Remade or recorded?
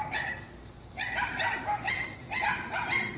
recorded